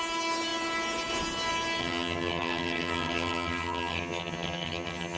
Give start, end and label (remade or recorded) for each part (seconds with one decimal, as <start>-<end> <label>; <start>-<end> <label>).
0.0-1.8 recorded; 1.8-5.2 remade